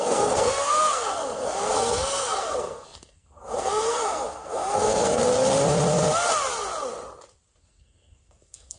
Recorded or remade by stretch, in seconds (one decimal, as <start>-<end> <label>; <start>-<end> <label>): 0.0-5.2 remade; 5.2-7.6 recorded; 7.6-8.8 remade